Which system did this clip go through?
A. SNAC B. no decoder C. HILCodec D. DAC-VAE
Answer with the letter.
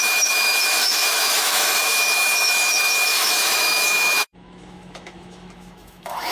D